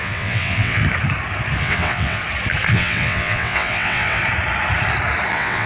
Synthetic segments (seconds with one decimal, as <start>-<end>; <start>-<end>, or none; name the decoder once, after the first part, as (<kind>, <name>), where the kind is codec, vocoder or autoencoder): 0.0-0.8 (vocoder, WaveNeXt); 1.6-2.2; 2.7-4.2; 5.3-5.7